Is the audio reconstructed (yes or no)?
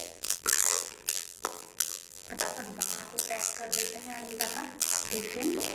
yes